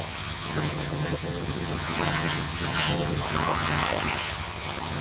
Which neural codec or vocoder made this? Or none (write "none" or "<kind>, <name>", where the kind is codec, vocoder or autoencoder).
vocoder, HiFi-GAN